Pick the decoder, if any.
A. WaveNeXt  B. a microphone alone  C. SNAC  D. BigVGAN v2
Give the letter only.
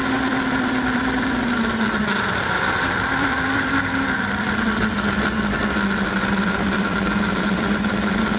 D